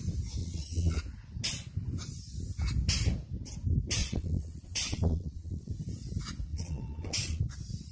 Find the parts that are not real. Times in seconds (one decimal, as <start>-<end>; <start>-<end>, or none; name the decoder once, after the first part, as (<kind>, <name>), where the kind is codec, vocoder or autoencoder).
0.4-1.0 (vocoder, Vocos); 4.0-5.7; 6.5-7.4